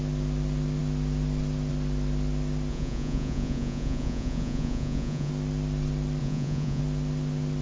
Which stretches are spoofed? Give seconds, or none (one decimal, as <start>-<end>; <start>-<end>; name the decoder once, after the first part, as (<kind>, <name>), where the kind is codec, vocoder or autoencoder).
2.7-5.3 (vocoder, Vocos); 6.2-6.8